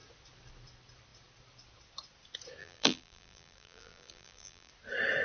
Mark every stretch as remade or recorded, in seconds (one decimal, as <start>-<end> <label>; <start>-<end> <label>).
0.0-2.6 recorded; 2.6-4.7 remade; 4.7-5.2 recorded